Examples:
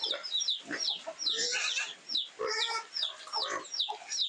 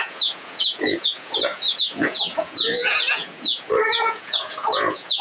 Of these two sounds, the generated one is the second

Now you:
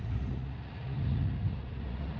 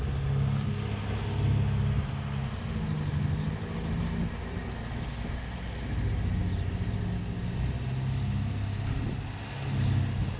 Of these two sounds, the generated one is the first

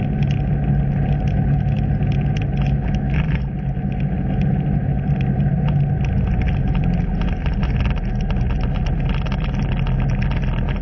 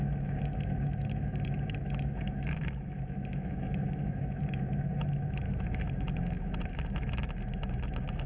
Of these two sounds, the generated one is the second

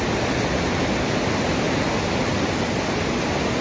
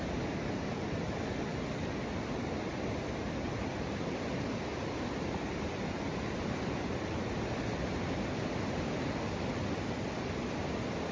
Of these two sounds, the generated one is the second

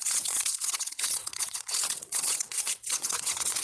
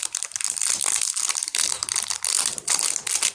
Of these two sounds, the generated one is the first